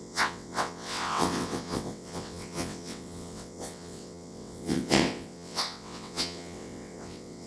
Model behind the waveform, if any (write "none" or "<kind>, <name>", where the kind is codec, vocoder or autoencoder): vocoder, WaveNeXt